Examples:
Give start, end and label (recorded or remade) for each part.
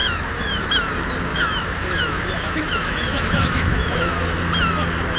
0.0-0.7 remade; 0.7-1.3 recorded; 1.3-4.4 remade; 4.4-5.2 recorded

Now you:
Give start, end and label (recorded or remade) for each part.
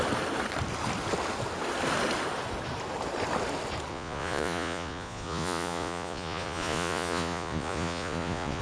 0.0-3.9 recorded; 3.9-8.6 remade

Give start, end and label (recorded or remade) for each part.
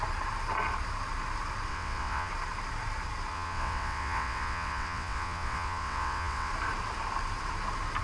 0.0-1.7 recorded; 1.7-2.3 remade; 2.3-3.3 recorded; 3.3-6.5 remade; 6.5-8.0 recorded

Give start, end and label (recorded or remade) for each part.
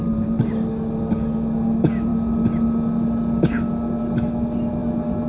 0.0-5.3 recorded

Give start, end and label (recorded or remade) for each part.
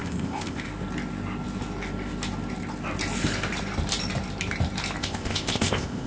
0.0-0.7 remade; 0.7-5.0 recorded; 5.0-6.1 remade